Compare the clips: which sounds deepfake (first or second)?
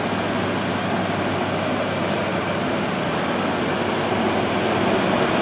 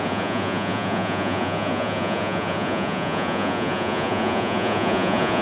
second